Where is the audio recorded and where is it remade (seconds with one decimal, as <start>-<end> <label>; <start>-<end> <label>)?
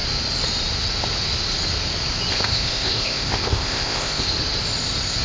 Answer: 0.0-2.3 recorded; 2.3-4.3 remade; 4.3-5.2 recorded